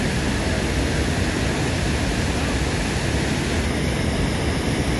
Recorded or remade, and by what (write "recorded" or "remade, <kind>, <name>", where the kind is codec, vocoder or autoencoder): recorded